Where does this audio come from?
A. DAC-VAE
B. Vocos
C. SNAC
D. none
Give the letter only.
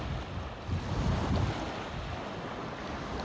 D